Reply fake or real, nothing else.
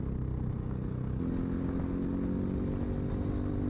real